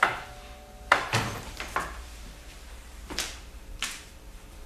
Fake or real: fake